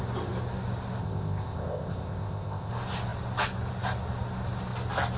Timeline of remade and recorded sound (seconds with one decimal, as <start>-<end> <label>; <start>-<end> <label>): 0.0-1.0 recorded; 1.0-2.7 remade; 2.7-5.2 recorded